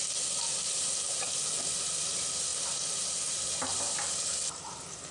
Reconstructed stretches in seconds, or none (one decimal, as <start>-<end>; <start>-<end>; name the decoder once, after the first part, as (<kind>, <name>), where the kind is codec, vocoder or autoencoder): none